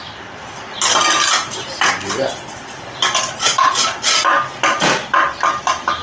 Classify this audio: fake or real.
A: real